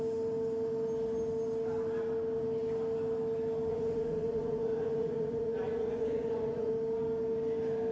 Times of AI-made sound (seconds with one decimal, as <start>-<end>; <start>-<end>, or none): 3.7-6.7